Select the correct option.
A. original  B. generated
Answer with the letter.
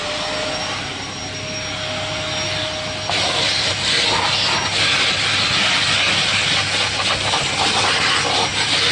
A